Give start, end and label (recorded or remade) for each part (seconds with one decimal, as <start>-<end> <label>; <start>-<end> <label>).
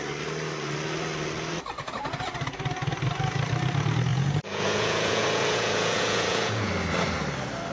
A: 0.0-4.1 recorded; 4.1-6.7 remade; 6.7-7.7 recorded